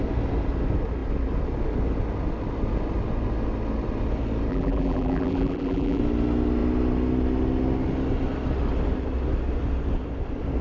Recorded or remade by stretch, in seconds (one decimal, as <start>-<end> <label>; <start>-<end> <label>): 0.0-4.5 recorded; 4.5-6.0 remade; 6.0-10.6 recorded